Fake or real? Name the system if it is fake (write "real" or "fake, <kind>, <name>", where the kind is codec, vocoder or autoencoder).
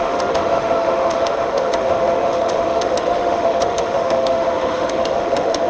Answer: fake, autoencoder, DAC-VAE